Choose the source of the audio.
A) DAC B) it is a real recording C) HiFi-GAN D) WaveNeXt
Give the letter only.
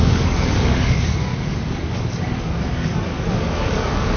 A